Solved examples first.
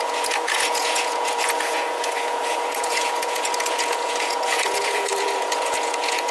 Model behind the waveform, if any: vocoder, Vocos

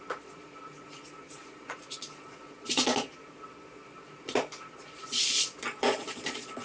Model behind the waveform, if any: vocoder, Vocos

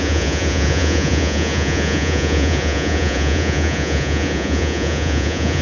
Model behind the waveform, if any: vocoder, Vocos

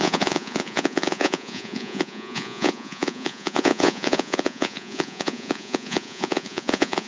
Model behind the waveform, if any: vocoder, Vocos